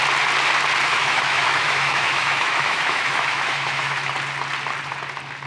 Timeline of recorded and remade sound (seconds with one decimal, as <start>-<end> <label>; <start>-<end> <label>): 0.0-0.9 recorded; 0.9-4.1 remade; 4.1-5.5 recorded